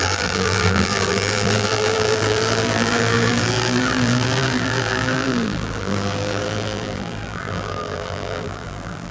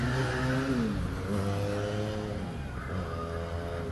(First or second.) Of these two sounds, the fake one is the first